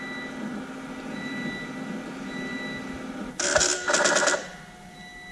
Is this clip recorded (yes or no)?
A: yes